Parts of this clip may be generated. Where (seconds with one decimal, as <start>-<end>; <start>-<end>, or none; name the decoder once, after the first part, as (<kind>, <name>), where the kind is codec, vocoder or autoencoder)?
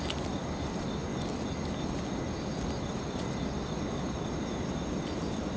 none